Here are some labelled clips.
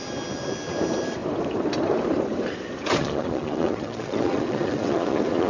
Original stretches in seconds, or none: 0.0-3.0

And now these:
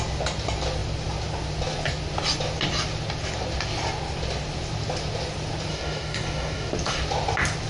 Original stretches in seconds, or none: 0.0-5.7; 6.7-7.7

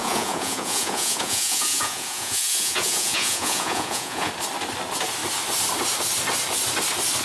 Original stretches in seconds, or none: 4.3-7.2